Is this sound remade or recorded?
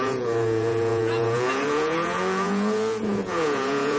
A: remade